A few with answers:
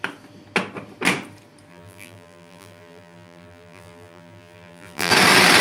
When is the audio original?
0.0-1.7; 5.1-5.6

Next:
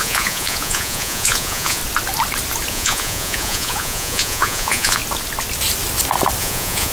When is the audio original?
1.8-2.7; 5.0-6.4

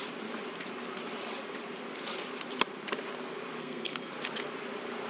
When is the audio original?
0.0-3.6; 4.1-5.1

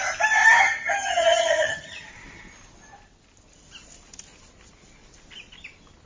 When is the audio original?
0.0-0.6; 2.1-6.1

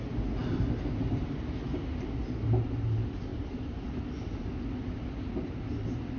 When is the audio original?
0.0-3.3; 4.0-6.2

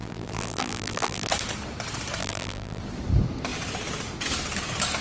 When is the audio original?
1.3-2.2; 2.8-5.0

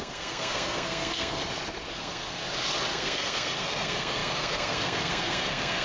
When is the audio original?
1.4-1.9; 2.4-2.9